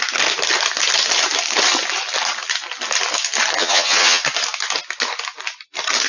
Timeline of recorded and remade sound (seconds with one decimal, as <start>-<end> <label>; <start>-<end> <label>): 0.0-3.6 recorded; 3.6-4.2 remade; 4.2-6.1 recorded